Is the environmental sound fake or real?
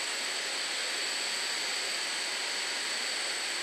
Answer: real